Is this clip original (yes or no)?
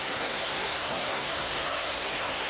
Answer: no